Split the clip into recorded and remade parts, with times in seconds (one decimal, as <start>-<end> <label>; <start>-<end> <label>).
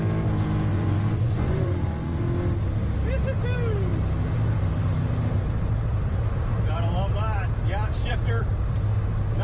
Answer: 0.0-0.7 recorded; 0.7-2.2 remade; 2.2-9.4 recorded